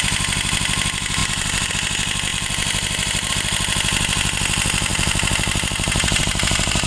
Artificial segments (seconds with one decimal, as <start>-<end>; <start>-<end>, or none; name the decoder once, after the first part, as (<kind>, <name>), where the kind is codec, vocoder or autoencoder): 1.2-1.7 (vocoder, BigVGAN v2); 2.3-3.3; 4.9-6.2